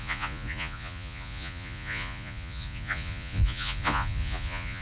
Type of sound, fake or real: fake